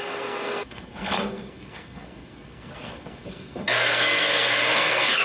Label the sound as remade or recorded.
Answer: remade